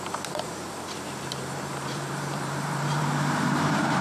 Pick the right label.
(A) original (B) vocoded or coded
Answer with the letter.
B